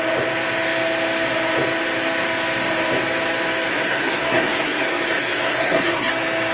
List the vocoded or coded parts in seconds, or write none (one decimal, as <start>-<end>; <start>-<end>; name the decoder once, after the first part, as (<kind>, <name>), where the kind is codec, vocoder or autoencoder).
3.7-6.1 (codec, SNAC)